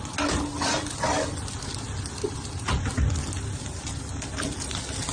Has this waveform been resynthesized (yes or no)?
no